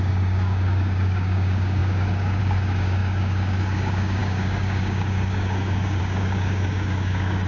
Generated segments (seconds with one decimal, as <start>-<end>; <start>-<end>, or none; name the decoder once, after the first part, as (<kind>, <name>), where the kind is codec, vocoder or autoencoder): 0.0-7.5 (codec, DAC)